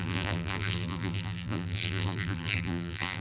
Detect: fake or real fake